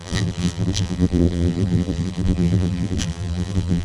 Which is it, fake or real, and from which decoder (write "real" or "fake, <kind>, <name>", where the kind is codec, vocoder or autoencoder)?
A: fake, vocoder, BigVGAN v2